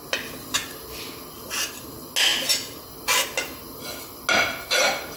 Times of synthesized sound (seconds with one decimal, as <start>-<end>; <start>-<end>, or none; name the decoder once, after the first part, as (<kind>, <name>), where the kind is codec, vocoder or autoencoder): none